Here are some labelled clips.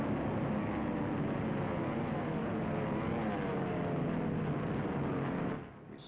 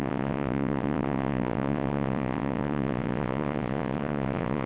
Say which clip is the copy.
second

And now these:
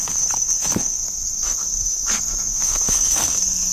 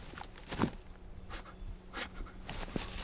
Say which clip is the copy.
first